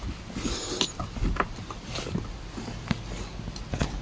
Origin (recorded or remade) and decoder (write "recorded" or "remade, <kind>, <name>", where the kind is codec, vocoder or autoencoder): recorded